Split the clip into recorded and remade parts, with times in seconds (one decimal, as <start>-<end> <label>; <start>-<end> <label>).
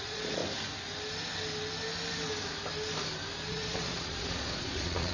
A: 0.0-0.4 remade; 0.4-3.5 recorded; 3.5-5.1 remade